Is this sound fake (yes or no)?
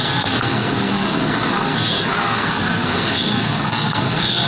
yes